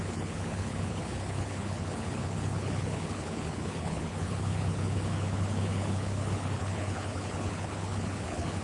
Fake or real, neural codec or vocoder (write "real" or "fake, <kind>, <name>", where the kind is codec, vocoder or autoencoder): fake, codec, HILCodec